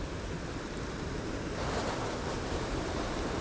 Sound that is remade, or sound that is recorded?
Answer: recorded